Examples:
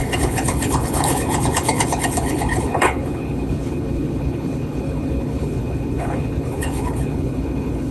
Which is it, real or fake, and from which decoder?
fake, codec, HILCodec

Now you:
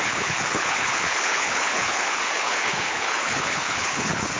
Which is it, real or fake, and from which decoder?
fake, codec, HILCodec